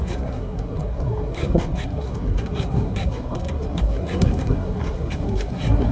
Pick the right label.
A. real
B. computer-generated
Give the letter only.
B